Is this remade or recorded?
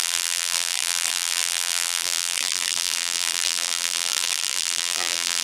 remade